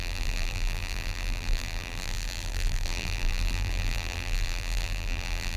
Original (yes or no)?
no